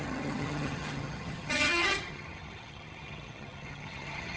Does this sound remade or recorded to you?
remade